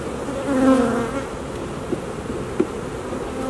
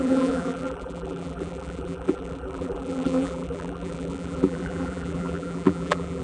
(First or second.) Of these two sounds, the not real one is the second